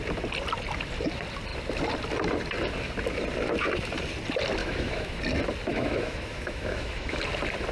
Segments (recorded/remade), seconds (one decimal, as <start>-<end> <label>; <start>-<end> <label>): 0.0-4.6 recorded; 4.6-5.2 remade; 5.2-5.7 recorded; 5.7-7.2 remade; 7.2-7.7 recorded

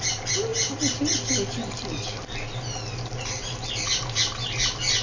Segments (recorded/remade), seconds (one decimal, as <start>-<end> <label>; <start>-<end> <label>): 0.0-5.0 recorded

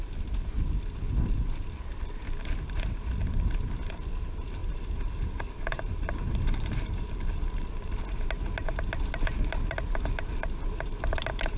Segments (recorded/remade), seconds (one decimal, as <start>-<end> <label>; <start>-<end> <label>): 0.0-4.6 recorded; 4.6-7.7 remade; 7.7-11.6 recorded